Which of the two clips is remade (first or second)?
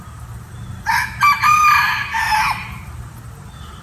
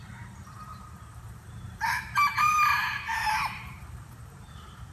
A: second